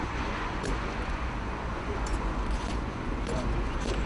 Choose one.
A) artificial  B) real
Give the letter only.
A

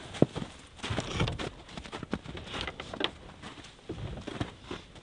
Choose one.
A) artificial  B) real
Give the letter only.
B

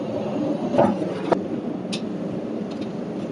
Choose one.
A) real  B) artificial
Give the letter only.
A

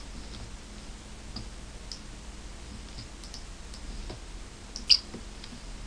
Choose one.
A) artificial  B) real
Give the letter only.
B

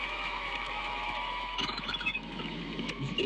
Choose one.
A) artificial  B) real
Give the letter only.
A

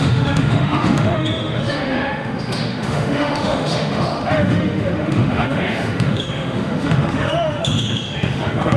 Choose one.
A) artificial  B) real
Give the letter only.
A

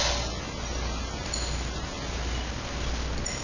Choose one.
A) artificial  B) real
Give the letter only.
B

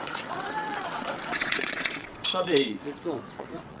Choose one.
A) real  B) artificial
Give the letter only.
B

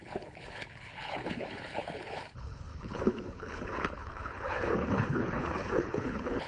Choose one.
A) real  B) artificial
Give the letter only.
B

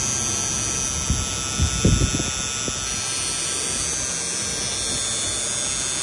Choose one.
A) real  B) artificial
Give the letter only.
A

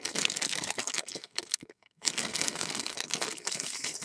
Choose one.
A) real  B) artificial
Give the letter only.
B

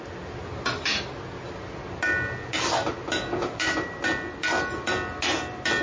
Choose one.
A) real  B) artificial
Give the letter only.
A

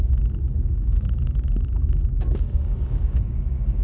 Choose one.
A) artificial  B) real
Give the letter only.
A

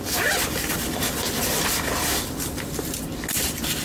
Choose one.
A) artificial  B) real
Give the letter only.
B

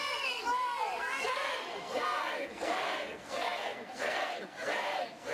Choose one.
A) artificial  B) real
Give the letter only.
A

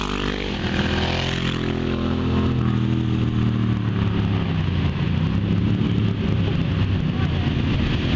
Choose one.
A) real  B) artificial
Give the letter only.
A